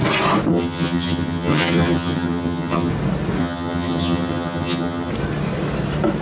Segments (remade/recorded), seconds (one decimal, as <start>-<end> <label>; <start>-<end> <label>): 0.0-0.5 recorded; 0.5-2.9 remade; 2.9-3.4 recorded; 3.4-5.1 remade; 5.1-6.2 recorded